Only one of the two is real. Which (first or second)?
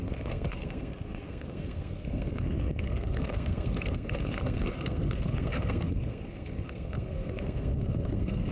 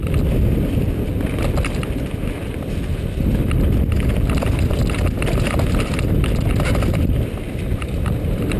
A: second